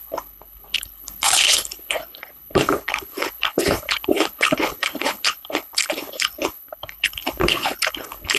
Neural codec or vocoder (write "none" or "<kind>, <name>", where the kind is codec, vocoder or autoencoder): codec, HILCodec